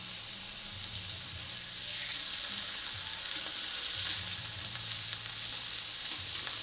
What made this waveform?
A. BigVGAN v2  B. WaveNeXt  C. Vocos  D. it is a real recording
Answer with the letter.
A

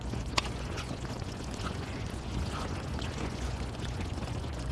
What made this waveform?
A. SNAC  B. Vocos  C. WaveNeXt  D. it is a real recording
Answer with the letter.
B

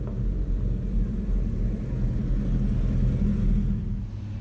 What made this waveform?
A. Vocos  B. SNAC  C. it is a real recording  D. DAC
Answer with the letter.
C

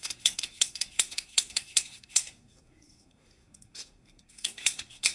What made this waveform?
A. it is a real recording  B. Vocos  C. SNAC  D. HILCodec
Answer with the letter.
C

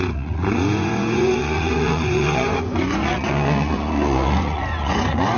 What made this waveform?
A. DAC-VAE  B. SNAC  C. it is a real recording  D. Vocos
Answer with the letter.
D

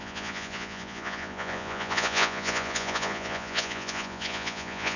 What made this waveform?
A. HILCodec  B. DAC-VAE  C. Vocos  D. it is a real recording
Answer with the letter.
C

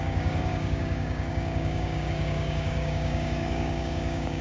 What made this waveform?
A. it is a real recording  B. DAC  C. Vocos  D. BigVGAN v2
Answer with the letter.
B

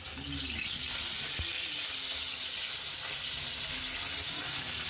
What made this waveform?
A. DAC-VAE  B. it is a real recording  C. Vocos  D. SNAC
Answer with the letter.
B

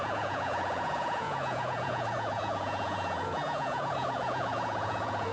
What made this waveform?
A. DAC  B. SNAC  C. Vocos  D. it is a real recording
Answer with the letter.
C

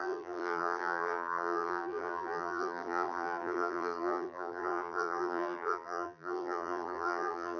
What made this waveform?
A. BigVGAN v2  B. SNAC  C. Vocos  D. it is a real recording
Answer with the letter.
A